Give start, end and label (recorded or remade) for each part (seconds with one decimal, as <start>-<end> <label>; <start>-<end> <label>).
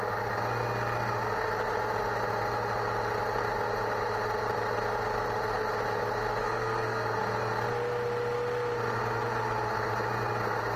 0.0-6.4 recorded; 6.4-7.2 remade; 7.2-10.8 recorded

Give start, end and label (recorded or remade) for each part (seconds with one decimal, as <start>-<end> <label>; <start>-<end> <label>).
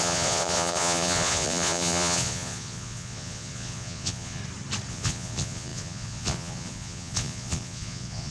0.0-4.4 remade; 4.4-4.9 recorded; 4.9-8.3 remade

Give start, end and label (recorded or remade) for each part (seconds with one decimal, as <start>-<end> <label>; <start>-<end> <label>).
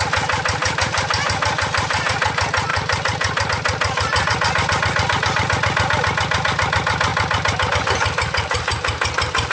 0.0-0.6 recorded; 0.6-2.1 remade; 2.1-2.7 recorded; 2.7-3.5 remade; 3.5-9.5 recorded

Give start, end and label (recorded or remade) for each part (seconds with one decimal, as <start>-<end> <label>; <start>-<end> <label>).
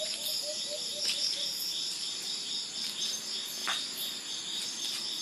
0.0-0.9 recorded; 0.9-2.5 remade; 2.5-3.6 recorded; 3.6-4.2 remade; 4.2-5.2 recorded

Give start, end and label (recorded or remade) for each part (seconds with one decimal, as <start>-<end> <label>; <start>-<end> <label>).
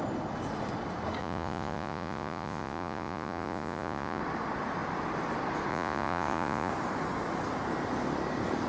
0.0-1.2 recorded; 1.2-4.2 remade; 4.2-5.7 recorded; 5.7-6.7 remade; 6.7-8.7 recorded